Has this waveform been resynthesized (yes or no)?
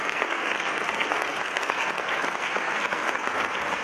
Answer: yes